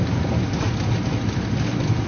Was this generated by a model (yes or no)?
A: no